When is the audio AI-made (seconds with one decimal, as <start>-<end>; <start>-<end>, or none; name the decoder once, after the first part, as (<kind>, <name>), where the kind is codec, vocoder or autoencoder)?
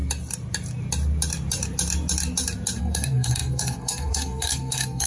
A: 2.8-5.1 (codec, SNAC)